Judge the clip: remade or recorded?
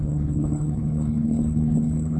remade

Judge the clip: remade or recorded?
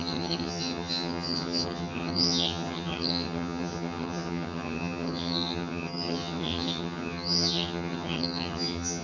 remade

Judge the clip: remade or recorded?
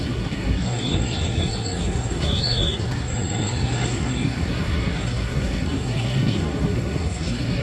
remade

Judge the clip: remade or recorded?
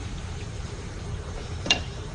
remade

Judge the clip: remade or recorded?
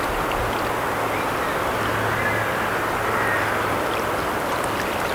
recorded